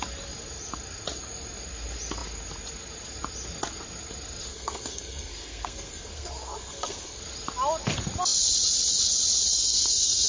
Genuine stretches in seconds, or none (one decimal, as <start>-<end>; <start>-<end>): 0.0-4.5; 7.2-9.5